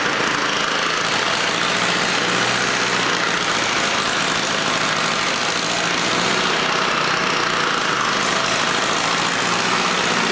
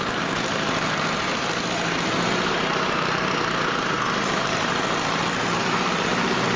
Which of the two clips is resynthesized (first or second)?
second